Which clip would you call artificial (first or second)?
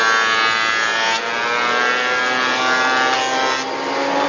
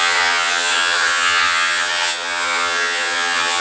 second